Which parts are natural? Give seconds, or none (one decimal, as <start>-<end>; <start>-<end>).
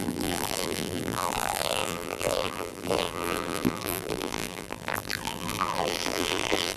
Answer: none